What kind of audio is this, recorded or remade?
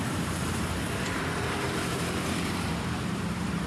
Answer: remade